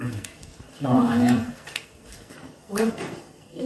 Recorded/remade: remade